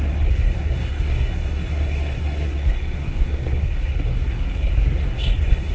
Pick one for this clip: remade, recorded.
remade